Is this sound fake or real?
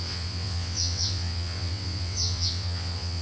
fake